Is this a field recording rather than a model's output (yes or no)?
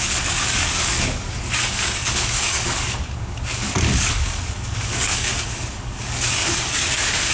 no